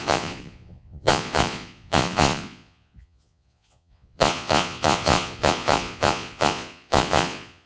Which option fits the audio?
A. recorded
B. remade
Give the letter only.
B